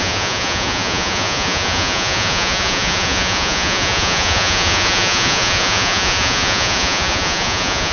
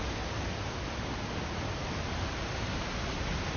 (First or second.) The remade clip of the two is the first